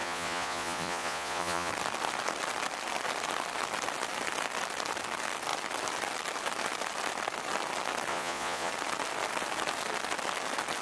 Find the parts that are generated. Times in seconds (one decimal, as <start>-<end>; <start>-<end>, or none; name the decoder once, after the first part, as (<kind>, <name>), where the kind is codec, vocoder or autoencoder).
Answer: 0.0-1.7 (vocoder, Vocos); 8.1-8.7